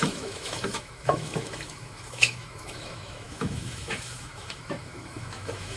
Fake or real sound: fake